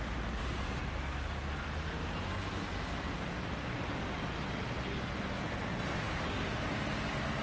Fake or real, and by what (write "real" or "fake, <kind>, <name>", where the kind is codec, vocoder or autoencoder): real